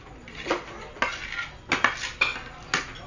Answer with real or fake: real